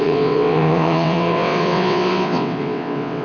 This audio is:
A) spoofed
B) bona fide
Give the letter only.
A